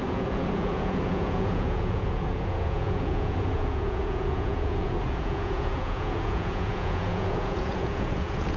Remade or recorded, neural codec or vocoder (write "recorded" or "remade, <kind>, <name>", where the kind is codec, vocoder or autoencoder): remade, vocoder, Vocos